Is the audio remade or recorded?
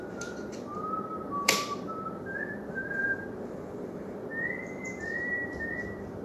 remade